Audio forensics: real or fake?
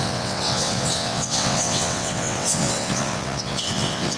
fake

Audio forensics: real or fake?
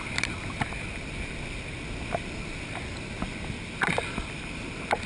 real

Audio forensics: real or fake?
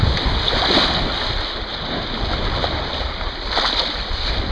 real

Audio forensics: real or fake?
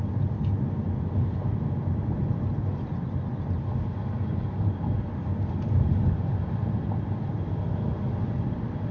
real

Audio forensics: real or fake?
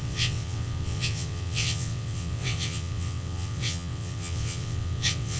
fake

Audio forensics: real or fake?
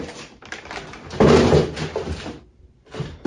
real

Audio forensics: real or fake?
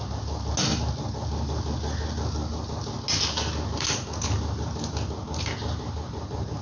real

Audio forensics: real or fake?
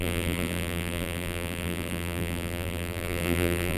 fake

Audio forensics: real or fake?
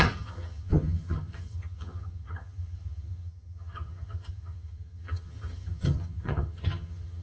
fake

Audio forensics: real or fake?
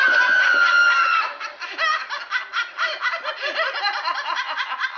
real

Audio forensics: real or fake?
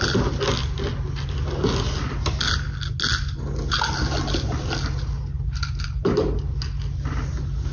real